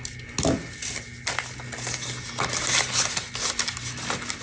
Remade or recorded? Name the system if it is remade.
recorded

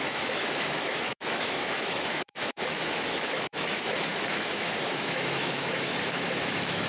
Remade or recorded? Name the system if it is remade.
remade, autoencoder, DAC-VAE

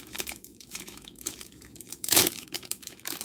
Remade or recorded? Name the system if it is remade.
remade, autoencoder, DAC-VAE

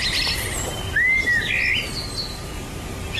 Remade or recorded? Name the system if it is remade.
recorded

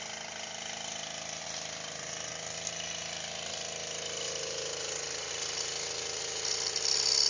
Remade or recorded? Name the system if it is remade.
recorded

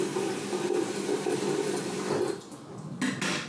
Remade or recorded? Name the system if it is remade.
recorded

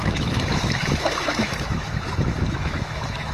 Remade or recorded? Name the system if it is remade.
remade, autoencoder, DAC-VAE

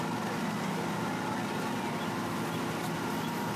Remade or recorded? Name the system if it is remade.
recorded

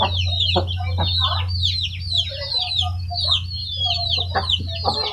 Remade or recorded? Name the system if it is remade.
recorded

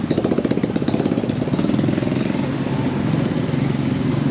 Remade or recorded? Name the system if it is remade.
recorded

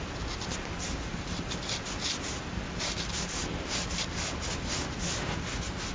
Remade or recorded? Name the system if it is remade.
recorded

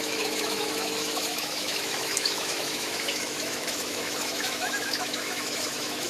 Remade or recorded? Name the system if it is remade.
remade, autoencoder, DAC-VAE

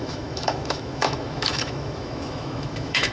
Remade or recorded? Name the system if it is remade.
remade, autoencoder, DAC-VAE